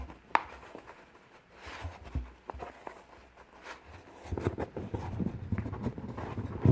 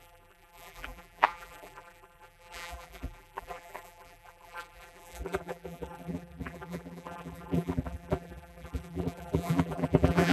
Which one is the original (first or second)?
first